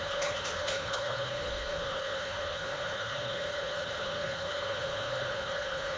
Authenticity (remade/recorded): remade